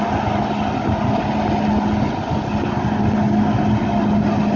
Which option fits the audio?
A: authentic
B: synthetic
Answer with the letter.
A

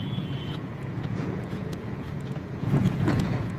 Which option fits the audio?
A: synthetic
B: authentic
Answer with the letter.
A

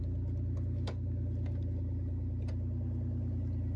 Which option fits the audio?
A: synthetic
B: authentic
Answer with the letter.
B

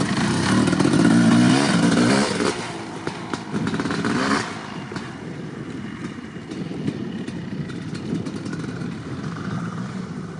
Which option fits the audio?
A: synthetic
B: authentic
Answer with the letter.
B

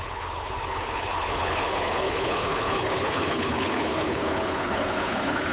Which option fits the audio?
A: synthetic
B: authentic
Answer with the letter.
A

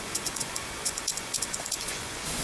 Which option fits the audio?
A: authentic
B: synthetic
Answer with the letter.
B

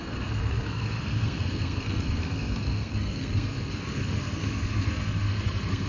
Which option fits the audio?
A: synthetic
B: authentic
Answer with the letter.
A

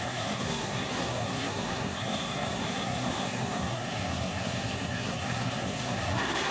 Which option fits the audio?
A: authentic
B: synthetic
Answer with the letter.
B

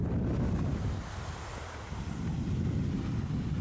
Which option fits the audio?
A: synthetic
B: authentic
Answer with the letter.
B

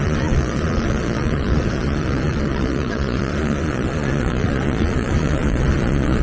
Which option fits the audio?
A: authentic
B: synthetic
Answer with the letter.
B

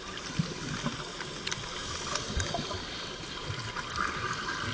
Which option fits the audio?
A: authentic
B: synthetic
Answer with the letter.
A